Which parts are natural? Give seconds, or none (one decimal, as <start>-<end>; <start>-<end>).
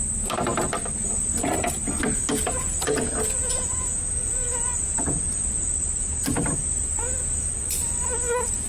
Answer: 0.0-2.3; 5.7-8.7